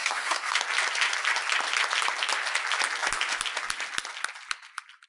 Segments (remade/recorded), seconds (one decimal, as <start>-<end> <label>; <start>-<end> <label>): 0.0-0.6 remade; 0.6-5.1 recorded